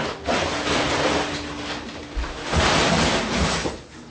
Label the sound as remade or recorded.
recorded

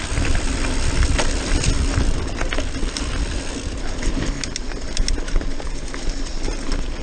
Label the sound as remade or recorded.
recorded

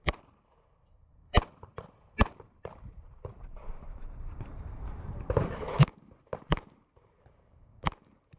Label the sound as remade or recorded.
remade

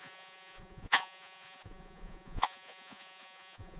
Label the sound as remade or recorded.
remade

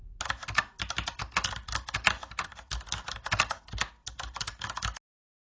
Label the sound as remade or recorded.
recorded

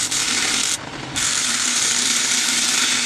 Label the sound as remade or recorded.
remade